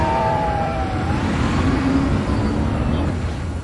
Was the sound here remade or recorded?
remade